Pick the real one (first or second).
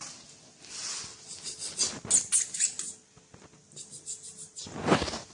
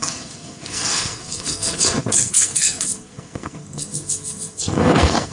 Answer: first